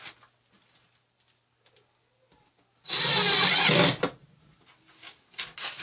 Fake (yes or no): no